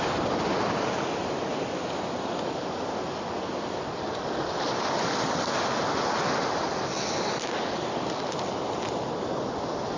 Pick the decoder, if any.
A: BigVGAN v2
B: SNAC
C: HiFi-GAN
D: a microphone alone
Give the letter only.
D